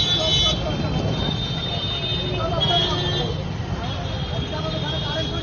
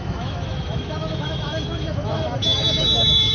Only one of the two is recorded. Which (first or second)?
first